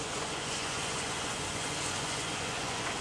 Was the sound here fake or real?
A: fake